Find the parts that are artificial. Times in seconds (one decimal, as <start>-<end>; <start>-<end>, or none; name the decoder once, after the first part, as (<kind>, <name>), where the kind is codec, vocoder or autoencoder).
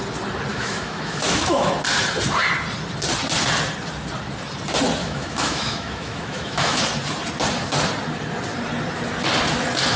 0.5-1.7 (autoencoder, DAC-VAE); 5.0-6.8